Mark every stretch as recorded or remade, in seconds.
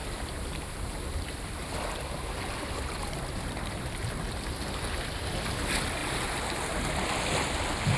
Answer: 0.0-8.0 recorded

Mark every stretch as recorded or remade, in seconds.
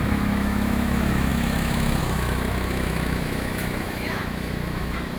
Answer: 0.0-5.2 remade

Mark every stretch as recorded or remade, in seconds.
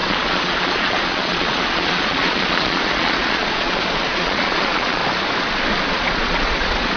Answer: 0.0-5.0 remade; 5.0-5.9 recorded; 5.9-7.0 remade